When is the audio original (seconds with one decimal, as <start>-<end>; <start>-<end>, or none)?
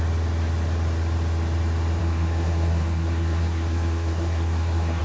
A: 0.0-2.0